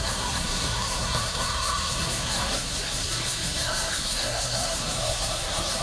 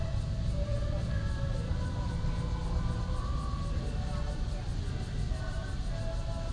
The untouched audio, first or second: second